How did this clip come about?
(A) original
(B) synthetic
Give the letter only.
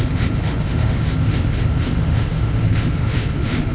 B